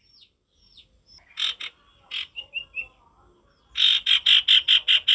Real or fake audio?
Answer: real